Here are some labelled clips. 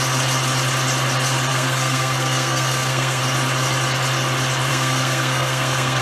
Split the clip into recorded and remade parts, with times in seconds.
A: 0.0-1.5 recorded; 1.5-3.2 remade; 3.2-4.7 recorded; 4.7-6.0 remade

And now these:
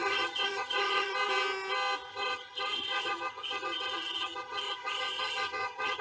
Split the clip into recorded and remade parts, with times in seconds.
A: 0.0-1.1 remade; 1.1-2.1 recorded; 2.1-6.0 remade

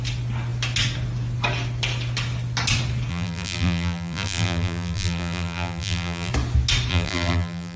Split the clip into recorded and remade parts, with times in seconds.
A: 0.0-3.1 recorded; 3.1-6.3 remade; 6.3-6.9 recorded; 6.9-7.8 remade

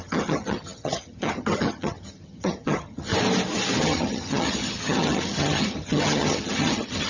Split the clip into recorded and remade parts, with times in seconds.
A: 0.0-3.1 remade; 3.1-3.8 recorded; 3.8-7.1 remade

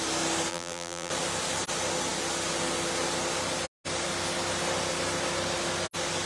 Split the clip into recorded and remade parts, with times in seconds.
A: 0.0-0.5 recorded; 0.5-1.1 remade; 1.1-6.3 recorded

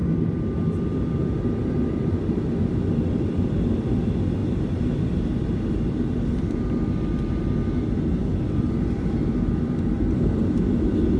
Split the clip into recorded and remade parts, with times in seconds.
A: 0.0-1.5 remade; 1.5-11.2 recorded

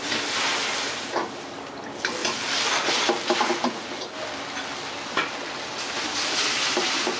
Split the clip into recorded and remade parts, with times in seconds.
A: 0.0-7.2 recorded